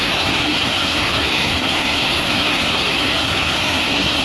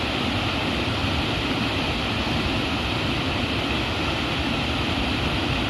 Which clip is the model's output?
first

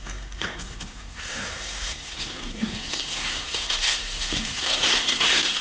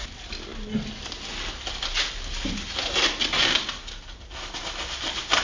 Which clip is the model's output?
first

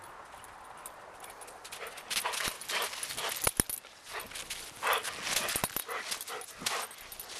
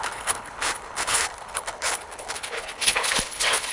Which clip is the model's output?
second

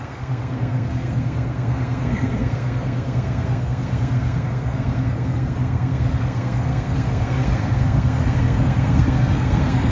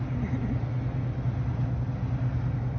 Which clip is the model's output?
first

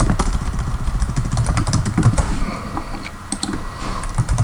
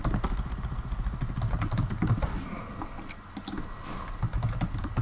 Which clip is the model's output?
first